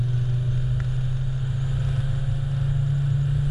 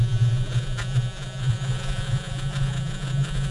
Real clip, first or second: first